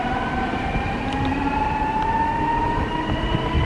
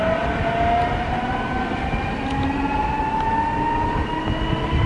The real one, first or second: second